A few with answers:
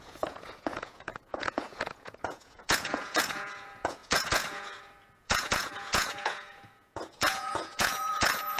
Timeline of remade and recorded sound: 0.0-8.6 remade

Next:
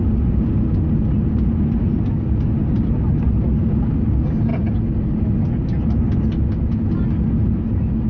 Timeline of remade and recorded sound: 0.0-8.1 recorded

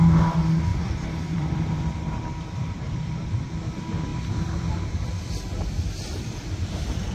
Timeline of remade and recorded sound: 0.0-0.7 recorded; 0.7-3.5 remade; 3.5-4.1 recorded; 4.1-5.2 remade; 5.2-7.1 recorded

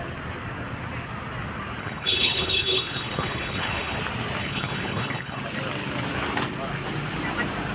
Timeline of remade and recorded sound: 0.0-1.8 recorded; 1.8-4.0 remade; 4.0-4.4 recorded; 4.4-5.4 remade; 5.4-7.7 recorded

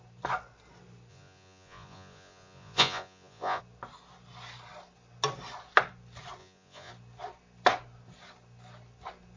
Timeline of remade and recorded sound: 0.0-1.1 recorded; 1.1-3.6 remade; 3.6-6.4 recorded; 6.4-6.9 remade; 6.9-9.4 recorded

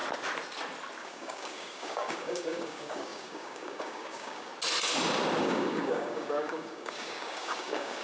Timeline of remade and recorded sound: 0.0-1.0 recorded; 1.0-4.5 remade; 4.5-5.4 recorded; 5.4-8.0 remade

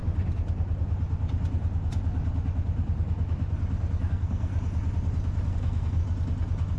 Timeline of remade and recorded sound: 0.0-4.1 recorded; 4.1-4.5 remade; 4.5-5.5 recorded; 5.5-6.0 remade; 6.0-6.8 recorded